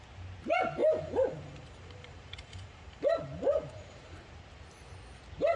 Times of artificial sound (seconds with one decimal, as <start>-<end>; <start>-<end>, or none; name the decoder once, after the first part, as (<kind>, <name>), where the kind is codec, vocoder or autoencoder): 0.8-4.2 (vocoder, BigVGAN v2)